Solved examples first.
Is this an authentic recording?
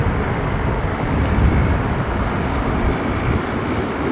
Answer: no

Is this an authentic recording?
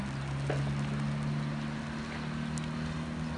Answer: yes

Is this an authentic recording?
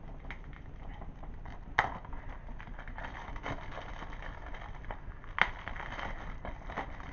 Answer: yes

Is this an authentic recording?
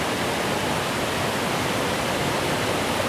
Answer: yes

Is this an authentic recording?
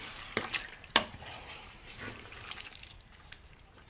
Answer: no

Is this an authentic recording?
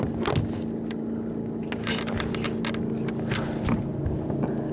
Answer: yes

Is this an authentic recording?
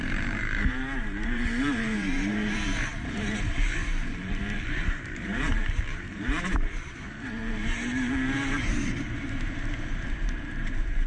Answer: no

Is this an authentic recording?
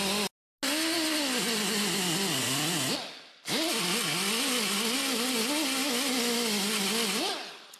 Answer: yes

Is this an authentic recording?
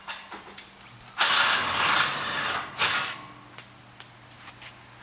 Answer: yes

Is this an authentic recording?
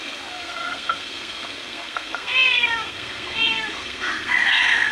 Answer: no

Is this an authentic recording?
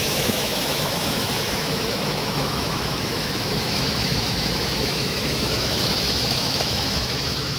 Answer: no